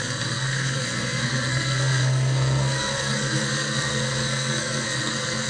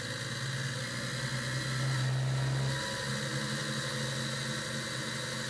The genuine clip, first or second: second